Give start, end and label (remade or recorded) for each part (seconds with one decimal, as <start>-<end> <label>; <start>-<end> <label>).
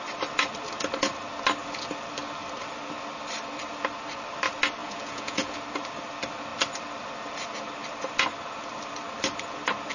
0.0-4.8 recorded; 4.8-5.6 remade; 5.6-9.9 recorded